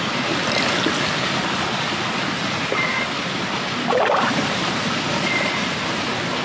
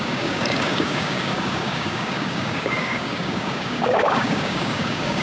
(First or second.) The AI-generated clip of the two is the second